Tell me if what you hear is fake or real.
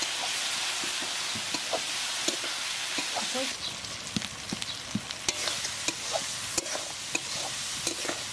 real